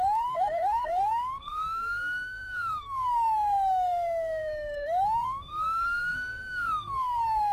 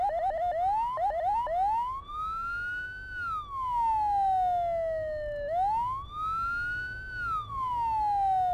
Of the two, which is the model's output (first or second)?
first